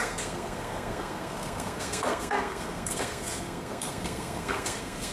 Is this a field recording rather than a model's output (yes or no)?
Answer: no